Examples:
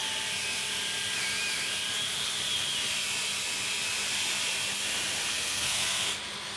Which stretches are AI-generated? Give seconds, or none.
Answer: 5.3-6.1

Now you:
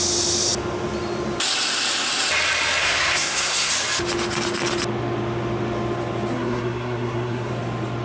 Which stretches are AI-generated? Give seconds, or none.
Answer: 2.8-3.7; 6.3-7.5

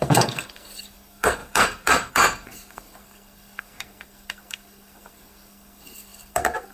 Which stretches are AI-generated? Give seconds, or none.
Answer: 0.0-6.7